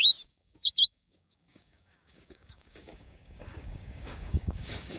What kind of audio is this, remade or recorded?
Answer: remade